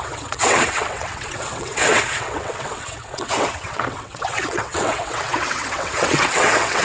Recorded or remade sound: remade